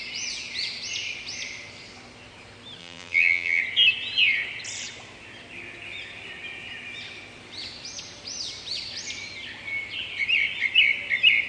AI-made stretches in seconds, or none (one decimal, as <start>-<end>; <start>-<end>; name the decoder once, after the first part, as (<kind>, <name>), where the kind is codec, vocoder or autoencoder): 2.8-3.6 (vocoder, BigVGAN v2)